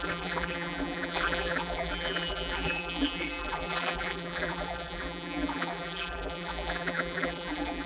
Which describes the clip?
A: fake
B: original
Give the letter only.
A